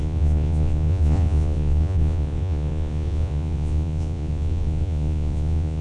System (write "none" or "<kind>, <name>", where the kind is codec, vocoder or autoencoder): vocoder, Vocos